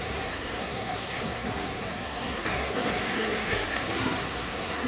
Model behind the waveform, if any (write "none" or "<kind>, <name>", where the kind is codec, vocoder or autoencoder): codec, SNAC